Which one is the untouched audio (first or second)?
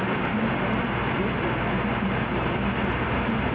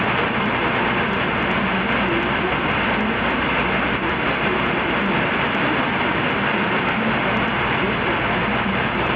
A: first